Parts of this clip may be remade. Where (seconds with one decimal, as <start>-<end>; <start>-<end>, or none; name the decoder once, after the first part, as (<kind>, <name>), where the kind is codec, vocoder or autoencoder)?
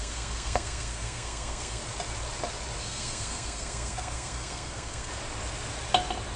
0.0-1.8 (codec, SNAC); 2.8-5.1